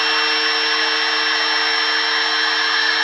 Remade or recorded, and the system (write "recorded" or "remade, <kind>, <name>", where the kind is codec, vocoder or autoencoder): recorded